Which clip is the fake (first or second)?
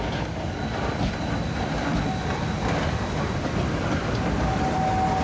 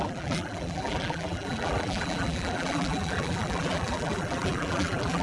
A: second